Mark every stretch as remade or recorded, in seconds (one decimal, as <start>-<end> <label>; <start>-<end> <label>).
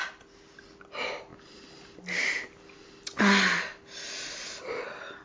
0.0-5.2 recorded